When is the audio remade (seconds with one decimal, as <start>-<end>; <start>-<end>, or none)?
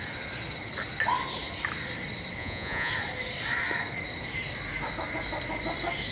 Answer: 2.4-2.9